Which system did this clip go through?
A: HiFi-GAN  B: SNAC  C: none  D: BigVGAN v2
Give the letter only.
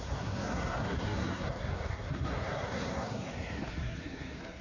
B